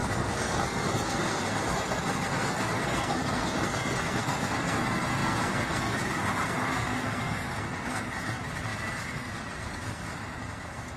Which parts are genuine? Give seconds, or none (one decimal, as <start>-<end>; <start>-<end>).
none